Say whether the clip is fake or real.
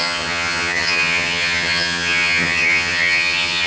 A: fake